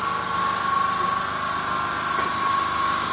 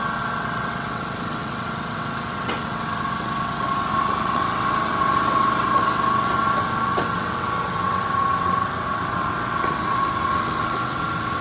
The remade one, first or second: second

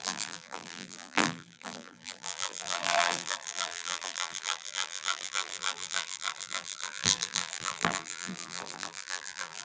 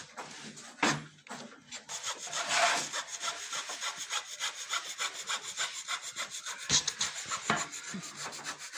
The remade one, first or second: first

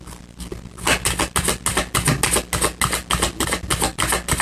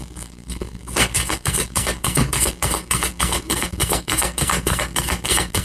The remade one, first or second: second